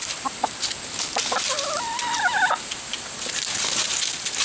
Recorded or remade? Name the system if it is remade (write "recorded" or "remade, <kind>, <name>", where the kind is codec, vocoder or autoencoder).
recorded